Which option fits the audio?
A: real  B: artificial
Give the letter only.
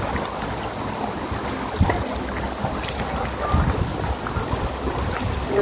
A